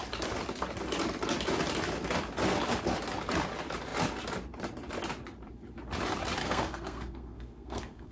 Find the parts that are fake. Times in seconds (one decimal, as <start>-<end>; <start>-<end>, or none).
6.4-8.1